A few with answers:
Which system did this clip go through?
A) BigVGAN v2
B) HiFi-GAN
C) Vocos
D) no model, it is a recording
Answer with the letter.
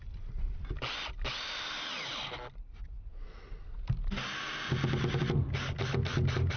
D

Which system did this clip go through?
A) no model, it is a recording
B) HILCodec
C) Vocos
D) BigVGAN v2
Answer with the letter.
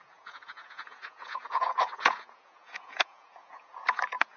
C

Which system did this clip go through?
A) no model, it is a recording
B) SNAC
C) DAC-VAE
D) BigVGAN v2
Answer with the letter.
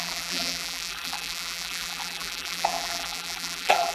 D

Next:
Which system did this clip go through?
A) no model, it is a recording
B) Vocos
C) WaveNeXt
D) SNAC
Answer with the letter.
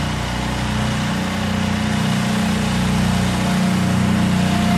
A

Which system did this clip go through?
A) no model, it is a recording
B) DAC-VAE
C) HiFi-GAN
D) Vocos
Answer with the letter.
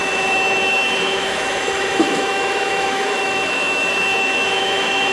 B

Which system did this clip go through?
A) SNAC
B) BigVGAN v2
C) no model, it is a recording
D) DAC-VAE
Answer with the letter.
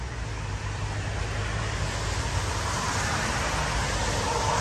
C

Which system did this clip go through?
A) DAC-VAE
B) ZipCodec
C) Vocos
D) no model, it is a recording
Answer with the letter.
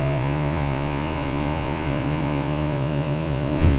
C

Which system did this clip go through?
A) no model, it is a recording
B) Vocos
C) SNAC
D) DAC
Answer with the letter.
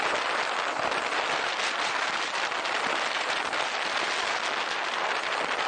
A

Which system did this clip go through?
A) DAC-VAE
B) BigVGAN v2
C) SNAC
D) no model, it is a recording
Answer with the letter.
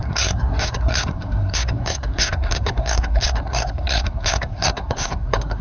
C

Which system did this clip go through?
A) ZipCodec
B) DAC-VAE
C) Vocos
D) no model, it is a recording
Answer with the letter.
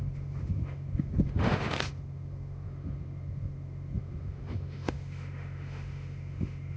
B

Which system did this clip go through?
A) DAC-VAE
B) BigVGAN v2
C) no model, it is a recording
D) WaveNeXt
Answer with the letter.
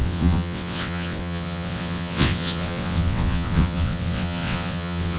D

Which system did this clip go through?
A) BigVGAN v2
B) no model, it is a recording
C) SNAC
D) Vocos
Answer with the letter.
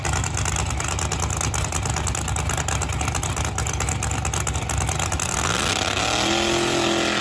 B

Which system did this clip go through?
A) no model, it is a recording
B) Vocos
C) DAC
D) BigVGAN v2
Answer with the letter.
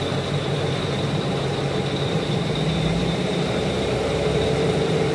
D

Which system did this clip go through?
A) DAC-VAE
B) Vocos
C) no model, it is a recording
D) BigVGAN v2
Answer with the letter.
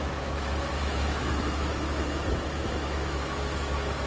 A